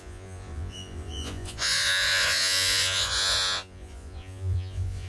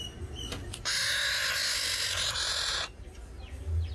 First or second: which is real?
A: second